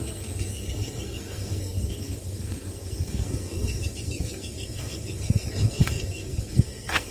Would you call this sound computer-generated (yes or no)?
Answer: yes